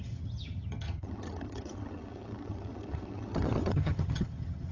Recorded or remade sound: remade